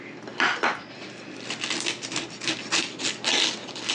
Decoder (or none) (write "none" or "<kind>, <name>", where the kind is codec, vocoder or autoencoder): none